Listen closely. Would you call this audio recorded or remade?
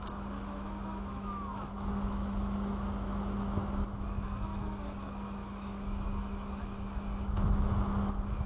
remade